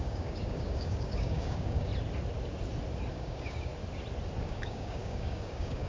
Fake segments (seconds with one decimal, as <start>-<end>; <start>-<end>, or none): 0.0-1.9; 3.1-3.7; 4.4-5.9